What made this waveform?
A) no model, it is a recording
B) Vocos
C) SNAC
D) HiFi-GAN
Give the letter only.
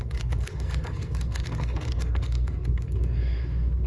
C